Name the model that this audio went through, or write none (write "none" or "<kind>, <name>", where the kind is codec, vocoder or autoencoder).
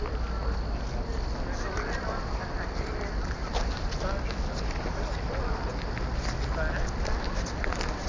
none